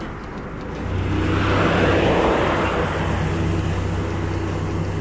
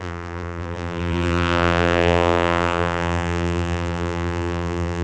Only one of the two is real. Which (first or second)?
first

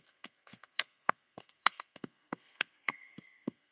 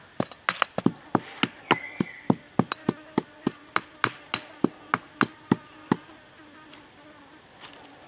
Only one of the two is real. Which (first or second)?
second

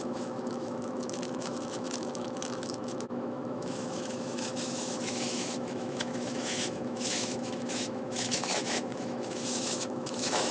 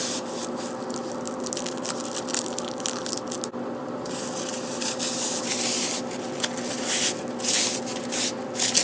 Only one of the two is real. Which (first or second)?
second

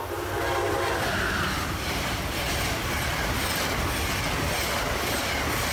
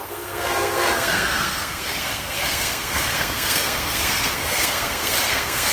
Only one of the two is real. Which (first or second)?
first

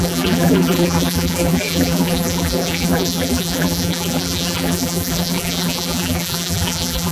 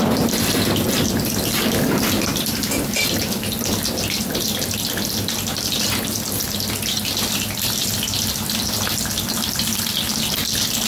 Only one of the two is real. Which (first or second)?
second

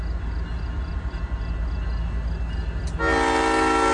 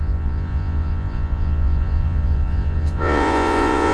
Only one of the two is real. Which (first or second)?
first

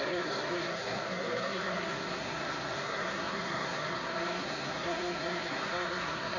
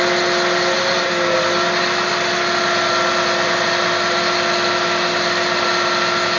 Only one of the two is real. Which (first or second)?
second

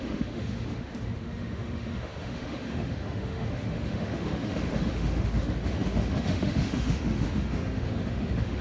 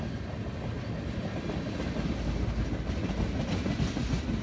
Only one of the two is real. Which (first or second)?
second